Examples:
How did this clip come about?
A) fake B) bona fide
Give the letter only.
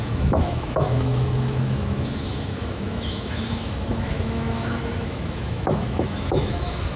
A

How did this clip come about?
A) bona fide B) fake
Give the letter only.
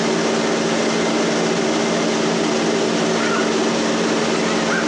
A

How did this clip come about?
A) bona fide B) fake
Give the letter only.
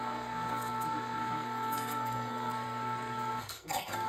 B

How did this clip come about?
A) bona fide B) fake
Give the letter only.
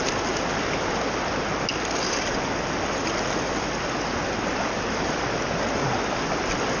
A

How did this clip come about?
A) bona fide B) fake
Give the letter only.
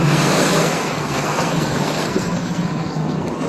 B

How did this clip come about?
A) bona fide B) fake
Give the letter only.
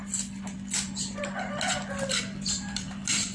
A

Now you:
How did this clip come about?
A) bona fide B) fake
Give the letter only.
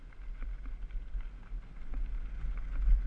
A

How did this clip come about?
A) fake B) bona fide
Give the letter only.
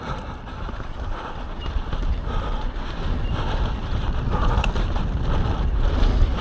B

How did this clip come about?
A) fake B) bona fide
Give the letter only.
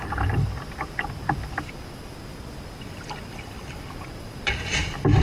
A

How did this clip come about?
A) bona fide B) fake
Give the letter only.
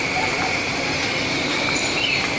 B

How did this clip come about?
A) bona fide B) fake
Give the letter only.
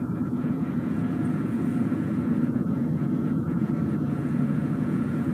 B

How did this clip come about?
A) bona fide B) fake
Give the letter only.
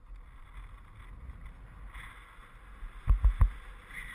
A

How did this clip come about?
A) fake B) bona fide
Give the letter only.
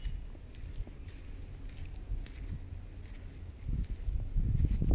B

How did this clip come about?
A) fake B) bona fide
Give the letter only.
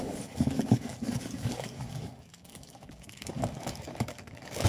A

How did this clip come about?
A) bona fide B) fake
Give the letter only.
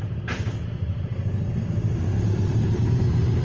B